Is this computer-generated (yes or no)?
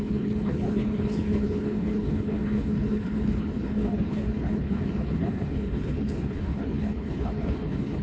yes